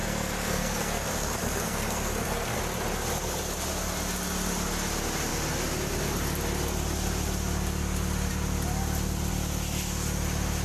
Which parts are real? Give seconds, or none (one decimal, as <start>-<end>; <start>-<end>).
2.6-10.6